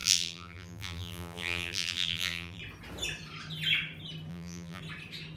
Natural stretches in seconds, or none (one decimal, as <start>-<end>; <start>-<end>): 2.6-4.3; 4.8-5.4